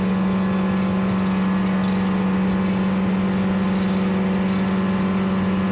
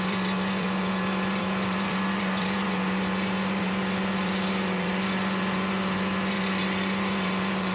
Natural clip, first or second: first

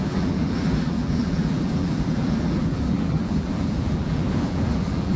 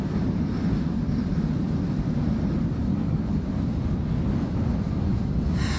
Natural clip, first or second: second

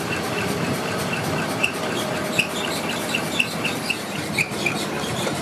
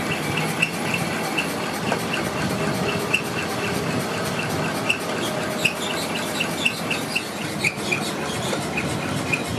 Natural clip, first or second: second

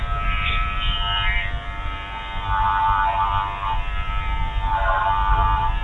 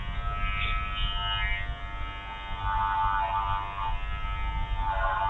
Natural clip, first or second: second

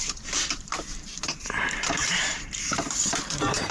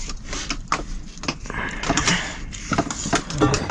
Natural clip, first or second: second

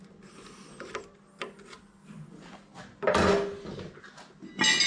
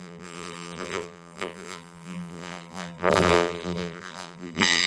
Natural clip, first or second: first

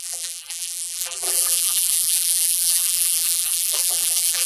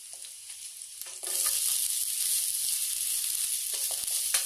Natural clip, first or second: second